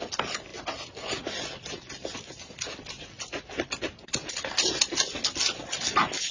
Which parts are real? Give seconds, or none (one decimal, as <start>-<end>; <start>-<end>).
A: 0.0-6.3